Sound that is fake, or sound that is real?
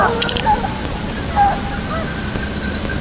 fake